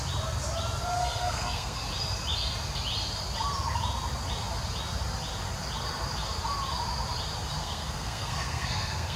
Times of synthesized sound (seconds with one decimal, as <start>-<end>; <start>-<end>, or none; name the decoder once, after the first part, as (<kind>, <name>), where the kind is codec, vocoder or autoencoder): 1.0-1.8 (codec, SNAC); 7.6-9.2